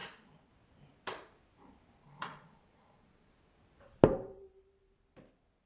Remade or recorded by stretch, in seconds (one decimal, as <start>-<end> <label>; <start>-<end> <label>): 0.0-0.5 remade; 0.5-2.0 recorded; 2.0-3.3 remade; 3.3-5.7 recorded